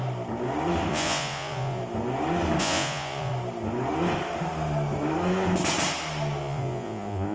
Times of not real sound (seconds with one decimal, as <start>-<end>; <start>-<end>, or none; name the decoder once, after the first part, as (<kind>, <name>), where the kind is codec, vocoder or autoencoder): 0.9-1.8 (vocoder, Vocos); 2.6-3.3; 6.4-7.3